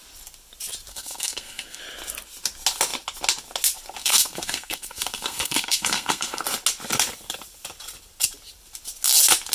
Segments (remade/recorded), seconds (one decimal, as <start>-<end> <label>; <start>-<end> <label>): 0.0-0.9 recorded; 0.9-1.8 remade; 1.8-4.0 recorded; 4.0-6.4 remade; 6.4-9.5 recorded